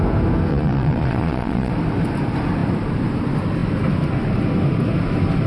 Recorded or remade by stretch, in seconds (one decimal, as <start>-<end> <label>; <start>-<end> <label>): 0.0-0.5 recorded; 0.5-1.7 remade; 1.7-5.5 recorded